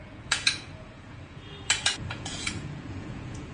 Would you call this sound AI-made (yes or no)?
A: yes